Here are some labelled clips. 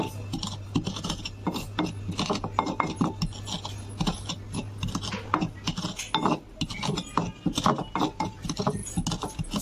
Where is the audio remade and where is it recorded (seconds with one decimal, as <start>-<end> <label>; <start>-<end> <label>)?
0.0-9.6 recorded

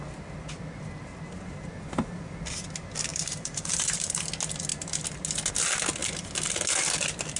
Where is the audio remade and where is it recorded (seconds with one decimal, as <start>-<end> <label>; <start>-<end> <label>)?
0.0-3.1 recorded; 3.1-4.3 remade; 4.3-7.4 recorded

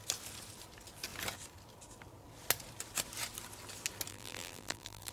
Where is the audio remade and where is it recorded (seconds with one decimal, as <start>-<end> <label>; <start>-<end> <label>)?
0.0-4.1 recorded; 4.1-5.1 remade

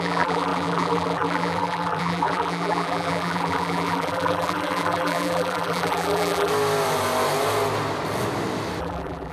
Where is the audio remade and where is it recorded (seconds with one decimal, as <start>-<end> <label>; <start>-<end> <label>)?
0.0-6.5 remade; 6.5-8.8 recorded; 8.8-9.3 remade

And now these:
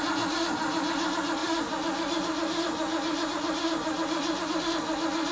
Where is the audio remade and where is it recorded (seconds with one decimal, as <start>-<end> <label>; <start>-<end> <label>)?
0.0-1.4 recorded; 1.4-4.6 remade; 4.6-5.3 recorded

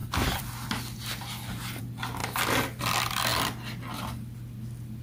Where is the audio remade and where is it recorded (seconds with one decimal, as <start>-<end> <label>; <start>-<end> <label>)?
0.0-1.8 remade; 1.8-3.3 recorded; 3.3-4.4 remade; 4.4-5.0 recorded